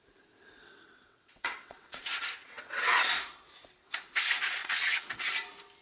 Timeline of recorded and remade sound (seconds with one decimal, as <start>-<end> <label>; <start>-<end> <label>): 0.0-0.6 recorded; 0.6-3.0 remade; 3.0-4.6 recorded; 4.6-5.3 remade; 5.3-5.8 recorded